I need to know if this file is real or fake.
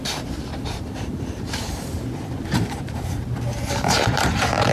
fake